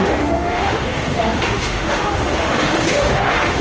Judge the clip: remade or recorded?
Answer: remade